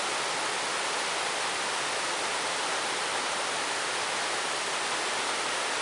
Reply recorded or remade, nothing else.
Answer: recorded